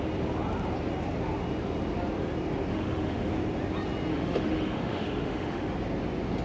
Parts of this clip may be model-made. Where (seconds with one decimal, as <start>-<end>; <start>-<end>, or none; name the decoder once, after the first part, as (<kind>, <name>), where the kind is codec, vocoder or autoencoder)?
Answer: 2.7-3.3 (autoencoder, DAC-VAE); 4.1-5.7